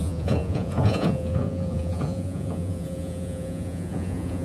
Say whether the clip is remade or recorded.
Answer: remade